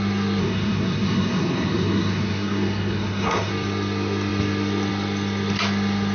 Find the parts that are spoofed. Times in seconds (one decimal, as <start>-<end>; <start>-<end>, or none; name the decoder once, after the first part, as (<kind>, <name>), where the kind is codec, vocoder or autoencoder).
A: 0.4-3.5 (codec, SNAC)